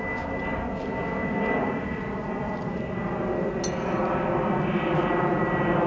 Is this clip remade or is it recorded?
recorded